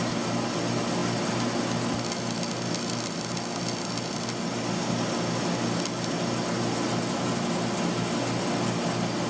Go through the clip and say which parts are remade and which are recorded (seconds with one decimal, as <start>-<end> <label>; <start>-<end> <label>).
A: 0.0-9.3 recorded